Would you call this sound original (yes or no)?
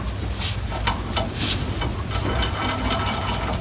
yes